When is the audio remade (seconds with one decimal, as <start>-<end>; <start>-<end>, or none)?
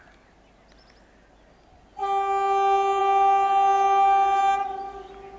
none